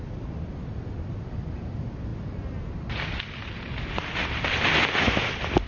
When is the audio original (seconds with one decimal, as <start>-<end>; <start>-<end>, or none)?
0.0-5.7